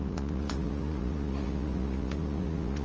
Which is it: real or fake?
fake